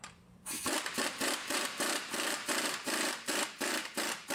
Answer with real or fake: fake